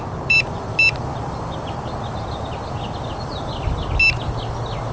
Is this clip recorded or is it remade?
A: recorded